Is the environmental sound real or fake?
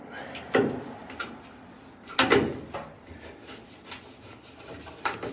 real